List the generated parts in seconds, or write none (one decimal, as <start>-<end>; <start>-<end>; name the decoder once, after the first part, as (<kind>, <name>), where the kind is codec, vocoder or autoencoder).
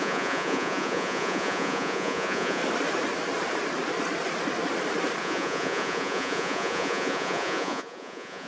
0.0-2.6 (vocoder, Vocos); 5.2-8.5